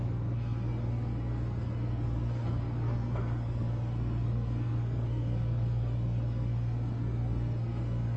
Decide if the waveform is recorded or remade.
remade